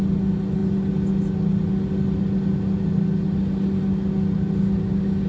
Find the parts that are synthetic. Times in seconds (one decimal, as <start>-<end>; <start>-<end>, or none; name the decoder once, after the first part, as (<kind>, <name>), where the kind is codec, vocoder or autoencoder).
none